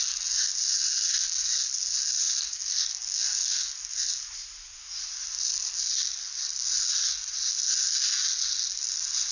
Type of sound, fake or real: real